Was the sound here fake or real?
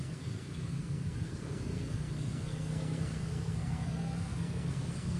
fake